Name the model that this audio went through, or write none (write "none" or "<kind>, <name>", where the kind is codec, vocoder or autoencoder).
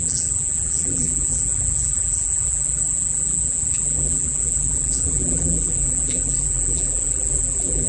vocoder, BigVGAN v2